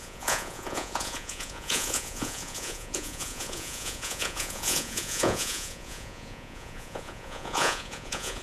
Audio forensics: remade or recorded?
remade